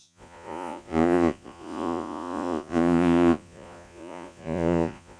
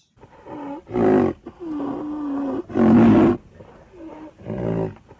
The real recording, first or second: second